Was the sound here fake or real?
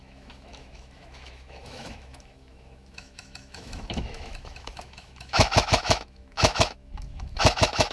fake